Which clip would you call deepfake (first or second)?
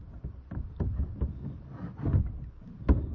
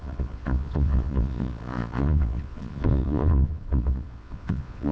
second